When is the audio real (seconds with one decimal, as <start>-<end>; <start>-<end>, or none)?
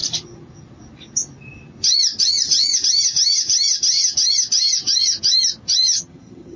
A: 0.0-2.2; 2.7-6.0